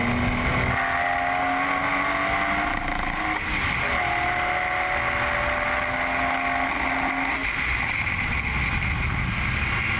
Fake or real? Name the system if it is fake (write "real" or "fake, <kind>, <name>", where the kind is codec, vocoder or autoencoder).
real